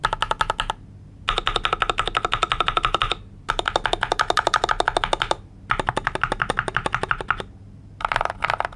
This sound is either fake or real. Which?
real